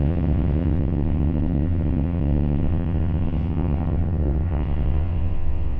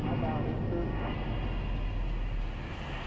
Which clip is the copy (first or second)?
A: first